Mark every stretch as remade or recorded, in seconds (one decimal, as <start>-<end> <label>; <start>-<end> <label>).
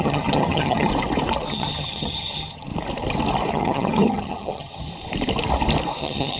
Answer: 0.0-0.9 remade; 0.9-1.5 recorded; 1.5-2.7 remade; 2.7-3.5 recorded; 3.5-4.9 remade; 4.9-6.0 recorded; 6.0-6.4 remade